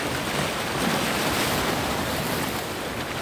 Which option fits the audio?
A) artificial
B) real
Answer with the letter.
B